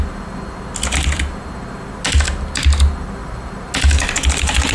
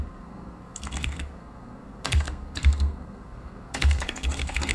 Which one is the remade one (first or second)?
second